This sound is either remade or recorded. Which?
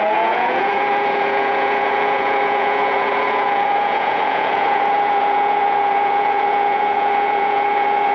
remade